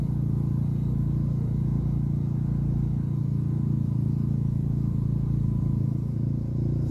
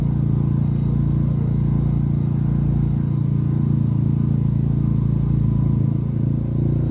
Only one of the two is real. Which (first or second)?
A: second